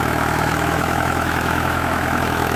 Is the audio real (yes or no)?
no